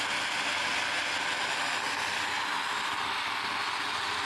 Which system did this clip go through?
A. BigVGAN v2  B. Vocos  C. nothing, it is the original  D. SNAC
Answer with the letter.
C